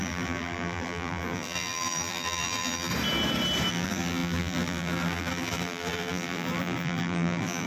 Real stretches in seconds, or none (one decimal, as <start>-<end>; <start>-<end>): 2.9-3.7